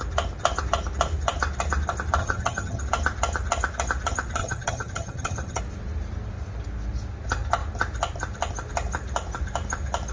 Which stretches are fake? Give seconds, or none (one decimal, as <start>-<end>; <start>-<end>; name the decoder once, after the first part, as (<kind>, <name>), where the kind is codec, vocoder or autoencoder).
2.2-2.8 (vocoder, HiFi-GAN); 4.4-5.6